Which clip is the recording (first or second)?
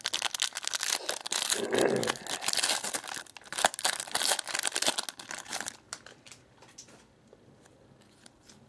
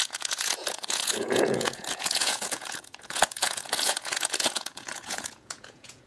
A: first